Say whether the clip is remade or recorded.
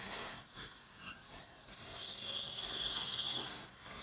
remade